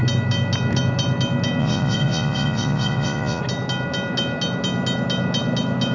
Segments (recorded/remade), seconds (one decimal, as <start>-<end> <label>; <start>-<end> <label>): 0.0-1.6 recorded; 1.6-3.4 remade; 3.4-5.9 recorded